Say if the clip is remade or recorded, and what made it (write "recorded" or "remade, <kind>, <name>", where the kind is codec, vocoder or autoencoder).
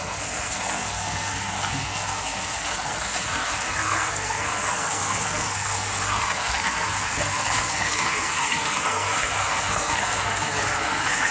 remade, codec, SNAC